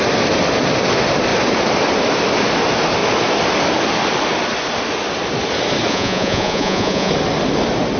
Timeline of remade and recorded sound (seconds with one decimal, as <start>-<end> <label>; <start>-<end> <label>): 0.0-5.9 recorded; 5.9-7.1 remade; 7.1-8.0 recorded